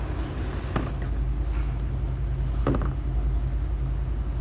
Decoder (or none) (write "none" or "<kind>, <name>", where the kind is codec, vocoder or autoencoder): none